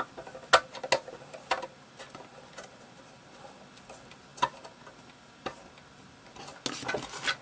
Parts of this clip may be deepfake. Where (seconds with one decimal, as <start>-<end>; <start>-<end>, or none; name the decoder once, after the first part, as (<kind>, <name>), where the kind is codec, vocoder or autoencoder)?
none

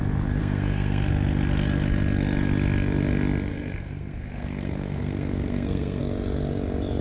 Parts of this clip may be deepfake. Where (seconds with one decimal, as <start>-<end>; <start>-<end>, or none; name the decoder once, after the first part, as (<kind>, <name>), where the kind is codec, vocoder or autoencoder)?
0.4-1.1 (codec, SNAC); 3.5-6.0